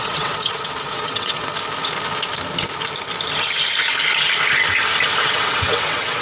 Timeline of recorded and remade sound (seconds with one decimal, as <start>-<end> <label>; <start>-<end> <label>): 0.0-1.5 remade; 1.5-5.2 recorded; 5.2-6.2 remade